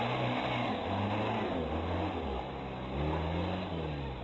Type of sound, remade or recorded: recorded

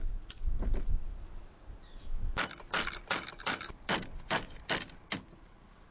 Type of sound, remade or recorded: recorded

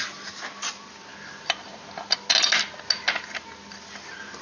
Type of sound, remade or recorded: recorded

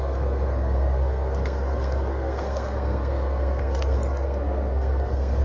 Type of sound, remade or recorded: remade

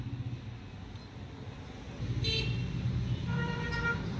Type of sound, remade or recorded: recorded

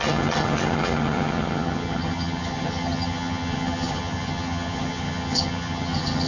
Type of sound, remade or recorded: remade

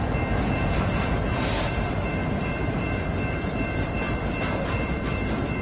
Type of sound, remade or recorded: remade